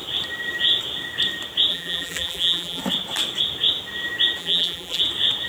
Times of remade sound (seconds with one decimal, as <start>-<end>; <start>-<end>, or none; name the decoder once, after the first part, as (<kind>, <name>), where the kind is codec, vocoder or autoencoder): 1.7-2.8 (vocoder, BigVGAN v2); 4.4-5.0